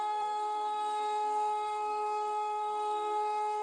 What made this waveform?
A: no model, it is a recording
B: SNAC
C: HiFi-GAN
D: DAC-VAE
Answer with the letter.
B